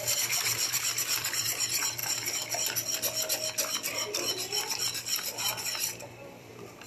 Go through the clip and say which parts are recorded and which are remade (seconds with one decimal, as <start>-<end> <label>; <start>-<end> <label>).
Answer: 0.0-2.0 remade; 2.0-5.6 recorded; 5.6-6.9 remade